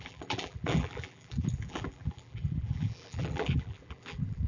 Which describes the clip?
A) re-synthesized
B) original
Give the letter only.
A